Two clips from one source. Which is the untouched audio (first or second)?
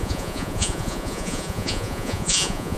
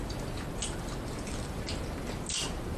second